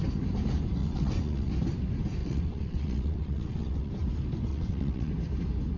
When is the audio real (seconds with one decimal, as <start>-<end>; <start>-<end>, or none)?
0.0-0.8; 1.5-2.2; 3.9-4.5; 5.1-5.8